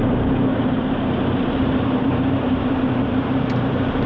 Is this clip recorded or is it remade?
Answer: remade